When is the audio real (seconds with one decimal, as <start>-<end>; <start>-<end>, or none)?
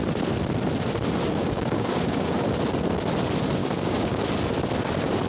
0.0-1.4; 2.5-3.6; 4.2-5.3